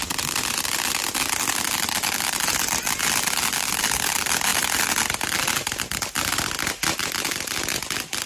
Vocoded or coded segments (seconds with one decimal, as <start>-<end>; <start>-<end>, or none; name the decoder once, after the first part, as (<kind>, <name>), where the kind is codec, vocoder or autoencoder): none